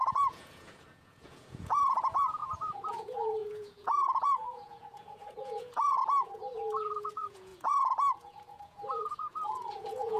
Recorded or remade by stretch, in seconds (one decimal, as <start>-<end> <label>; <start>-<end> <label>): 0.0-10.2 remade